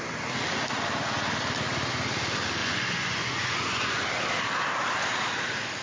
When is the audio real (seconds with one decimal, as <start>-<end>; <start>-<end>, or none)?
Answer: 0.0-2.6; 4.0-5.8